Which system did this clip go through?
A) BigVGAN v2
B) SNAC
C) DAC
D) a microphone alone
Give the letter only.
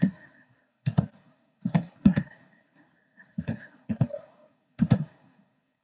B